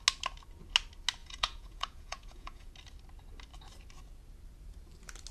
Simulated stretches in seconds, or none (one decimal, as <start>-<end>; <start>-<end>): 1.2-2.7